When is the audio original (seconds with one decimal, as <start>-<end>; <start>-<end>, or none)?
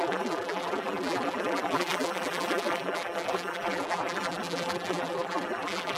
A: none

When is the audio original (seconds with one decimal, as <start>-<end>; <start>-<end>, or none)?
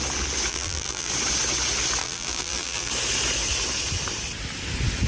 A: 0.0-0.5; 1.1-2.0; 2.9-5.1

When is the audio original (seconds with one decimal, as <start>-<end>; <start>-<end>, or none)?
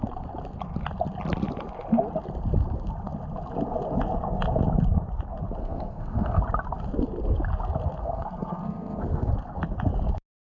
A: 0.0-5.6; 6.4-8.0; 9.3-10.5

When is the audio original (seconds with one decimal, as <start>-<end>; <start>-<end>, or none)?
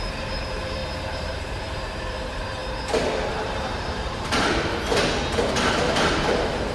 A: 2.6-3.3; 4.7-5.7